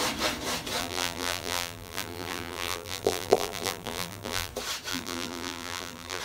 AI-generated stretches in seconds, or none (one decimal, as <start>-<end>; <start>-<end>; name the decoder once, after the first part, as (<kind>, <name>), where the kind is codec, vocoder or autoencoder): 0.8-4.5 (vocoder, BigVGAN v2); 4.9-6.2